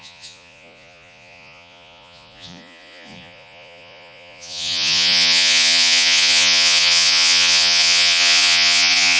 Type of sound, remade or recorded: remade